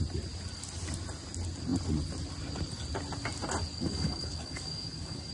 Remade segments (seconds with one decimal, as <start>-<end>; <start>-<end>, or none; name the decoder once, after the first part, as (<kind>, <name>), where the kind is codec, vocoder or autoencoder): 3.7-5.3 (codec, DAC)